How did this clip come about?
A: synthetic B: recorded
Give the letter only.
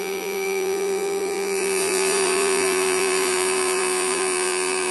A